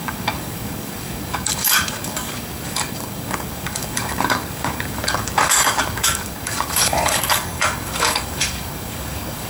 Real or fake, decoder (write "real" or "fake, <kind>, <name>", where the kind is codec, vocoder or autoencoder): fake, codec, DAC